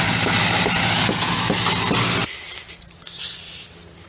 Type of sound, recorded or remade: recorded